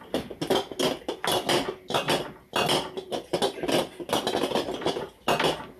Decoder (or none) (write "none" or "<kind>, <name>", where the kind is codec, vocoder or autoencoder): none